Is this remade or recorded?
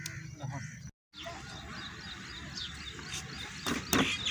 recorded